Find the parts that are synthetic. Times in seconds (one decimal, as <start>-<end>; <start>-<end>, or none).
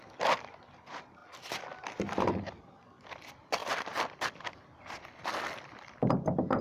3.6-4.2